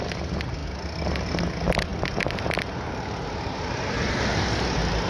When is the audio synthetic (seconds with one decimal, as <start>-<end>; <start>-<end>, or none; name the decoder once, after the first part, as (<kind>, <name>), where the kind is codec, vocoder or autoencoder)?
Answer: none